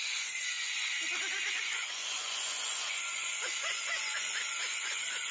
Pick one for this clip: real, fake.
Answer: fake